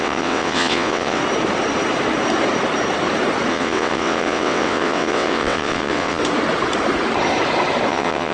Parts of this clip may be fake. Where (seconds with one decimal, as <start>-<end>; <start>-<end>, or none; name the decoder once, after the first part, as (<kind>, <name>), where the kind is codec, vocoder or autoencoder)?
0.0-1.2 (vocoder, WaveNeXt); 3.5-6.2; 7.9-8.3